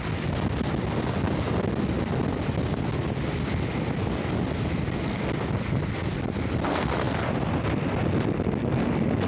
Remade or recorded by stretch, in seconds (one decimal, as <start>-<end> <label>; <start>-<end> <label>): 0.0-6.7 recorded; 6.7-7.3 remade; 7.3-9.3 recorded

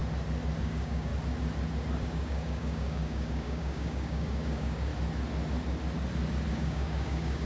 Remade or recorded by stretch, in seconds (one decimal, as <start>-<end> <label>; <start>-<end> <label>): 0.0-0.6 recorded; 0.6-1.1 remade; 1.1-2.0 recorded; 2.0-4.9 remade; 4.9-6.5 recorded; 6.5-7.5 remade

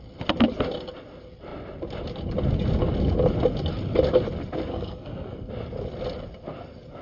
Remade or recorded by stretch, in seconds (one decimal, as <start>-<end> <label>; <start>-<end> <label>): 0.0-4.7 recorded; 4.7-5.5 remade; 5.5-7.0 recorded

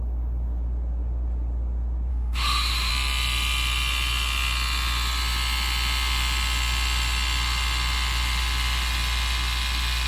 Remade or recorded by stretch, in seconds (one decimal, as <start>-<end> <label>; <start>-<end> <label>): 0.0-2.1 recorded; 2.1-2.9 remade; 2.9-10.1 recorded

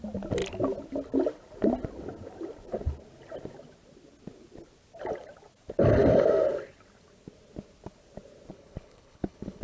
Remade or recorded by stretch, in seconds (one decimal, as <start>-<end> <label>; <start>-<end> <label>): 0.0-8.5 recorded; 8.5-9.6 remade

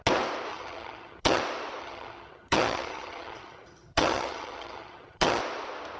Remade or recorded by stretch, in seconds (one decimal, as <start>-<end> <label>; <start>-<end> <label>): 0.0-0.5 recorded; 0.5-1.4 remade; 1.4-1.8 recorded; 1.8-5.4 remade; 5.4-6.0 recorded

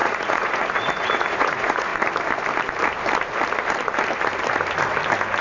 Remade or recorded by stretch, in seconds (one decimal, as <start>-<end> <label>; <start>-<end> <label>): 0.0-1.9 remade; 1.9-5.4 recorded